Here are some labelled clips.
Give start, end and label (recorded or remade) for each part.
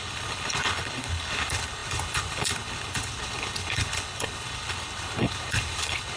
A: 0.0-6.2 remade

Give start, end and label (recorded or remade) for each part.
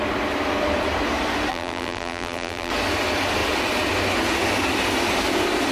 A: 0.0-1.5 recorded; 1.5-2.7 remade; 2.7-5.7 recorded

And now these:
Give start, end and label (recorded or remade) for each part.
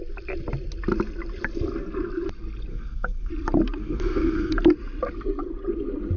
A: 0.0-2.7 recorded; 2.7-3.3 remade; 3.3-3.8 recorded; 3.8-4.5 remade; 4.5-6.2 recorded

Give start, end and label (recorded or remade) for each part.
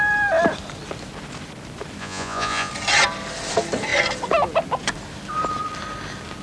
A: 0.0-2.0 recorded; 2.0-2.7 remade; 2.7-6.4 recorded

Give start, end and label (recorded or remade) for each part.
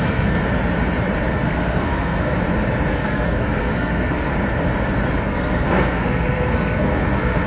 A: 0.0-0.4 remade; 0.4-1.3 recorded; 1.3-2.3 remade; 2.3-2.9 recorded; 2.9-4.3 remade; 4.3-5.2 recorded; 5.2-7.5 remade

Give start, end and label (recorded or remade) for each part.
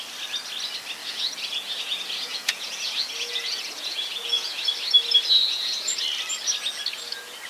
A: 0.0-1.0 recorded; 1.0-4.7 remade; 4.7-5.4 recorded; 5.4-6.0 remade; 6.0-7.5 recorded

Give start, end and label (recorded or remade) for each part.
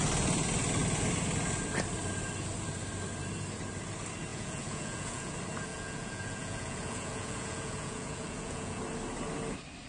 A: 0.0-4.3 recorded; 4.3-5.3 remade; 5.3-5.7 recorded; 5.7-8.8 remade; 8.8-9.9 recorded